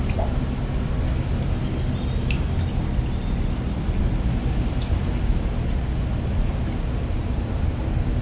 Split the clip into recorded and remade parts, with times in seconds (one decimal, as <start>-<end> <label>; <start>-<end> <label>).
0.0-8.2 recorded